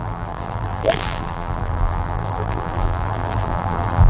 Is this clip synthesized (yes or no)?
yes